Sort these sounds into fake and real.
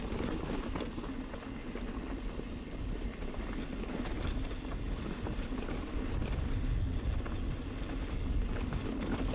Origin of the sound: real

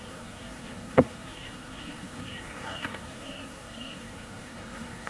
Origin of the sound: fake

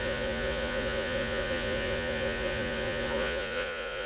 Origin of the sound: fake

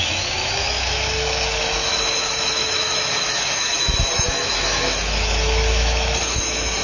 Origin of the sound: fake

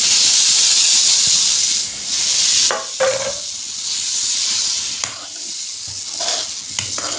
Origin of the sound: real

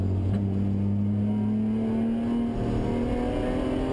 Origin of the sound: real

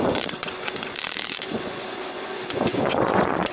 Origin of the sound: fake